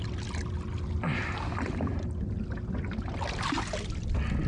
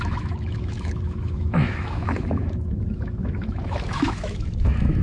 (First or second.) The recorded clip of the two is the first